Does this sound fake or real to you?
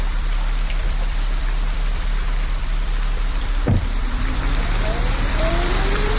fake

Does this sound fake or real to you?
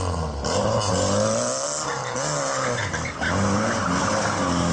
real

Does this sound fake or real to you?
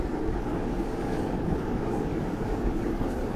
fake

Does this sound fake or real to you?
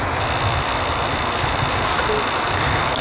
real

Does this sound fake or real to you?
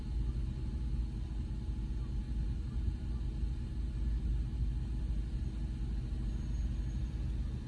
real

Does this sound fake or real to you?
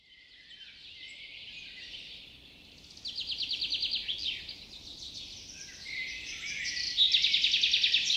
real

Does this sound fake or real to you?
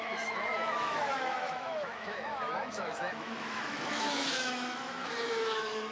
fake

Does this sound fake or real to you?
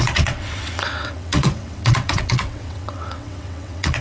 fake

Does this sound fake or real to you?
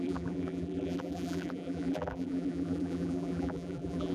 fake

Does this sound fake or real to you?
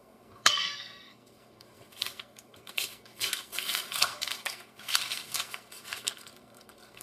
fake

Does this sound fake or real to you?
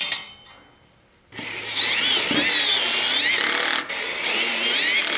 real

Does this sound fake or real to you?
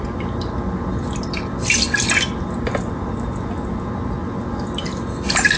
real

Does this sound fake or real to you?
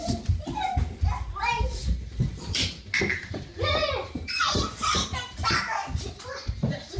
real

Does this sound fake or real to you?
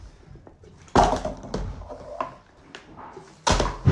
real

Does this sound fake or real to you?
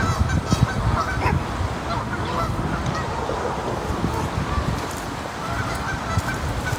real